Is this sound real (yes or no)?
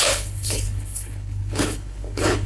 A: no